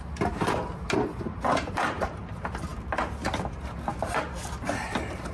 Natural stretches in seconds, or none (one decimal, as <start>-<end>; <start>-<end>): 0.0-1.1; 2.2-5.3